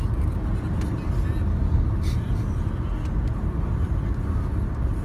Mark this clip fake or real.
real